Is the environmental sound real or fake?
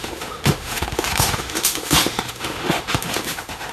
fake